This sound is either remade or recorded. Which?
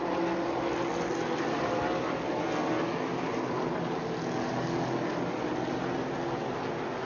recorded